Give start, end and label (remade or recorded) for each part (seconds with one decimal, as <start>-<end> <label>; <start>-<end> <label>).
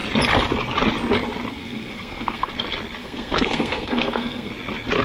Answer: 0.0-1.5 recorded; 1.5-2.5 remade; 2.5-3.0 recorded; 3.0-4.5 remade; 4.5-5.0 recorded